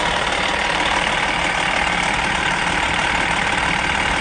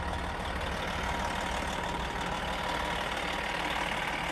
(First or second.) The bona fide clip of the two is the second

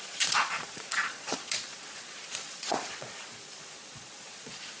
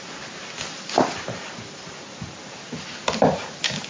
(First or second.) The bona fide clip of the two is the second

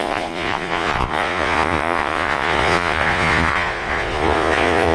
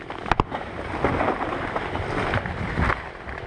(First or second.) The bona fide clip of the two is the second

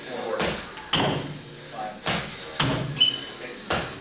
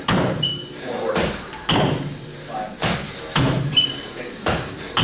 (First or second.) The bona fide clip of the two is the first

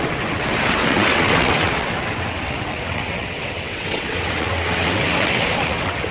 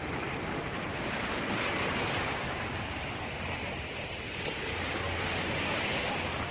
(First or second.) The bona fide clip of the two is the second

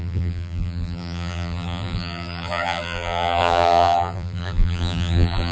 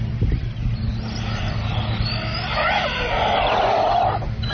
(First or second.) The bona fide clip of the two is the second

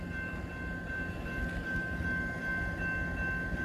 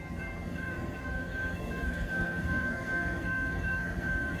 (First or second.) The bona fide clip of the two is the first